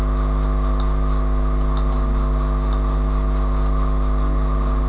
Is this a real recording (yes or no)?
yes